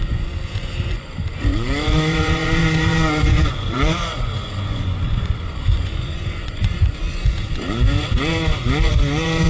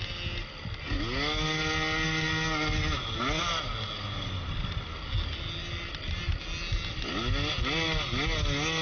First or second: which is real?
second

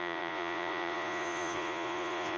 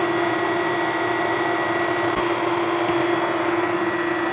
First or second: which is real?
second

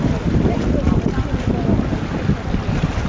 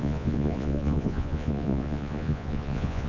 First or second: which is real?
first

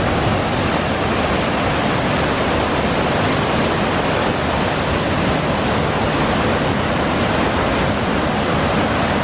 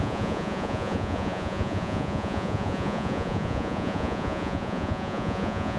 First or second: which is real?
first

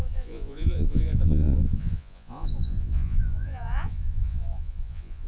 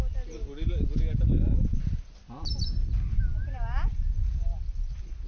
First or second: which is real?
second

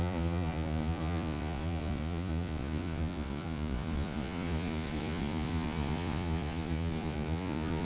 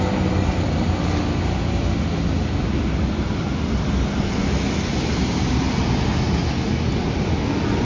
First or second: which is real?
second